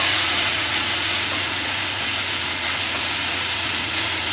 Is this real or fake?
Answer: fake